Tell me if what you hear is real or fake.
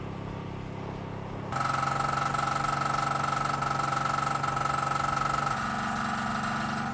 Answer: real